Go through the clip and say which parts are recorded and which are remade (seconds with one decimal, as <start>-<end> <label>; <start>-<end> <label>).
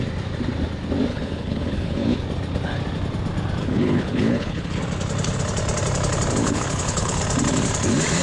0.0-1.1 recorded; 1.1-2.2 remade; 2.2-3.6 recorded; 3.6-4.8 remade; 4.8-6.4 recorded; 6.4-7.2 remade; 7.2-8.2 recorded